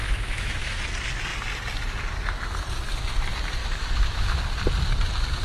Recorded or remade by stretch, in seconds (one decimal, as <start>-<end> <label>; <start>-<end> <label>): 0.0-0.8 remade; 0.8-3.6 recorded; 3.6-4.4 remade; 4.4-5.4 recorded